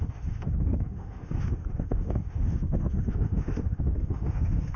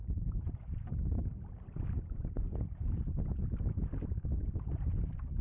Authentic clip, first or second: second